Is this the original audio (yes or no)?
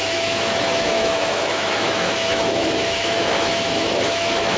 no